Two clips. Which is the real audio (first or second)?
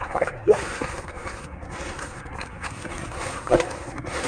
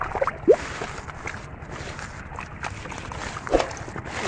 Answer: second